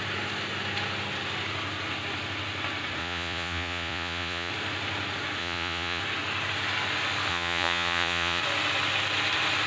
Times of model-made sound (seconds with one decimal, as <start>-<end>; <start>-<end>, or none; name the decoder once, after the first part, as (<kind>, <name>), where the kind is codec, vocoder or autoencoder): 3.0-4.5 (vocoder, Vocos); 5.4-6.0; 7.3-8.4